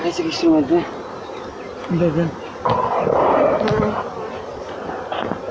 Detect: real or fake real